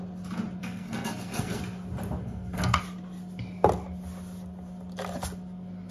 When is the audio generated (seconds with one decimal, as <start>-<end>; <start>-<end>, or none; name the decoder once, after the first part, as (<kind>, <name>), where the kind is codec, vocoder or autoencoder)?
0.6-1.6 (codec, SNAC); 2.2-2.8